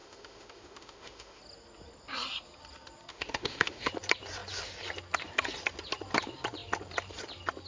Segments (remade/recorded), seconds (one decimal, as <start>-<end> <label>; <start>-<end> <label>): 0.0-1.4 remade; 1.4-3.1 recorded; 3.1-3.9 remade; 3.9-7.7 recorded